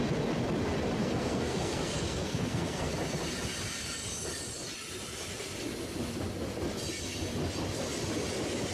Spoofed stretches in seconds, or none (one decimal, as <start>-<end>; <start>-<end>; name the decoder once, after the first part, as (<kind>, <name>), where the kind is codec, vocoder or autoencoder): 1.0-2.9 (codec, SNAC)